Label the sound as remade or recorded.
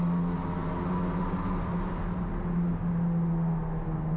recorded